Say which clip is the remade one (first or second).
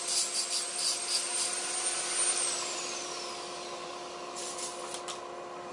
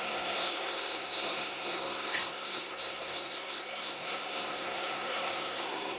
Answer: second